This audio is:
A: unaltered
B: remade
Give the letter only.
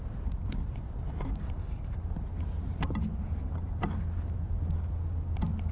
A